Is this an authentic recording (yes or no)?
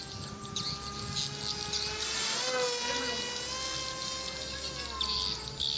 yes